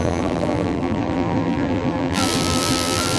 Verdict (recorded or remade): remade